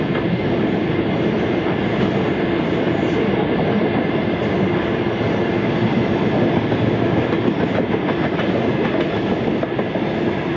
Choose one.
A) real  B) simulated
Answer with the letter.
A